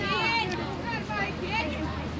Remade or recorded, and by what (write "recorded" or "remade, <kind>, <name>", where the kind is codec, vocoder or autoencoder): recorded